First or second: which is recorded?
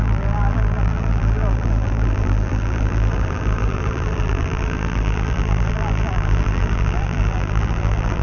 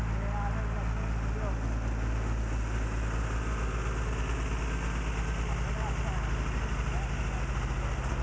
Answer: second